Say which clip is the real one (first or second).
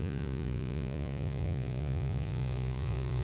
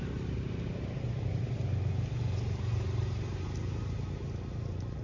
second